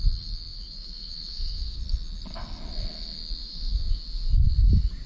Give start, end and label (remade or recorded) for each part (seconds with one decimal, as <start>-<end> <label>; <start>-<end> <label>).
0.0-0.5 recorded; 0.5-1.8 remade; 1.8-3.4 recorded; 3.4-4.0 remade; 4.0-5.1 recorded